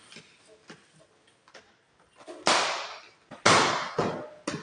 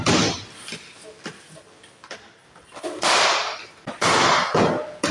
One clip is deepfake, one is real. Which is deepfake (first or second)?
second